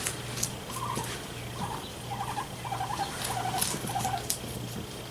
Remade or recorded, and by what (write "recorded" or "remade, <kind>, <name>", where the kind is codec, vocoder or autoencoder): recorded